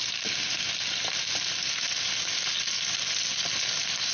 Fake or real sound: real